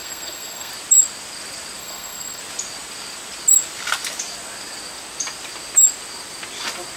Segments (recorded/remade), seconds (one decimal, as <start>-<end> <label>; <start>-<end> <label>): 0.0-0.7 remade; 0.7-1.8 recorded; 1.8-2.4 remade; 2.4-7.0 recorded